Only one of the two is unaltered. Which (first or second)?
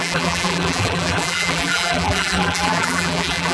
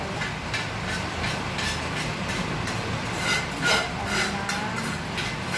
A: second